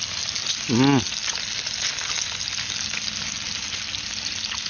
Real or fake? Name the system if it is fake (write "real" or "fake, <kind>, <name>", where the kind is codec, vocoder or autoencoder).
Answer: real